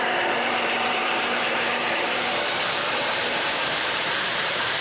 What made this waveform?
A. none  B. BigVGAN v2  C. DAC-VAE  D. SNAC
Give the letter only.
B